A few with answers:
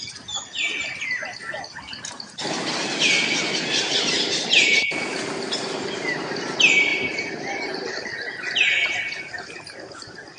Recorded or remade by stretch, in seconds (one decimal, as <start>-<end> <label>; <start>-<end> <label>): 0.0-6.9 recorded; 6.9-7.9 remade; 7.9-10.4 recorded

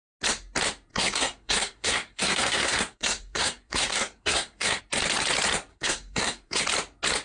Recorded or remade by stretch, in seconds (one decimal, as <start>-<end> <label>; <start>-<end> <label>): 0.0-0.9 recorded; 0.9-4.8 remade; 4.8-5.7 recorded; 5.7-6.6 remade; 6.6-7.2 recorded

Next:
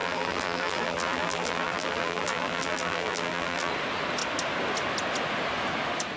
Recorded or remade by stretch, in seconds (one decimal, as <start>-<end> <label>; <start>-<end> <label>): 0.0-3.7 remade; 3.7-6.2 recorded

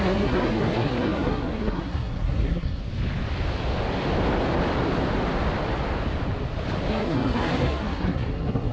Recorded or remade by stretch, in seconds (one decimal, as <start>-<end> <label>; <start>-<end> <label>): 0.0-2.8 remade; 2.8-6.9 recorded; 6.9-8.7 remade

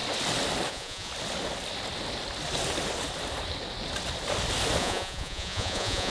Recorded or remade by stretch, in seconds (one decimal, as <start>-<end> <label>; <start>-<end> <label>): 0.0-0.7 recorded; 0.7-1.1 remade; 1.1-4.8 recorded; 4.8-6.1 remade